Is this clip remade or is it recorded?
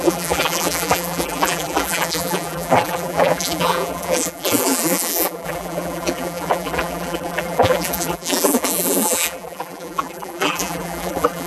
remade